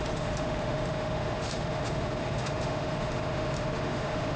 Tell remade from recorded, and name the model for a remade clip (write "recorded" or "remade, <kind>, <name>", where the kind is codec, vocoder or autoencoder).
remade, autoencoder, DAC-VAE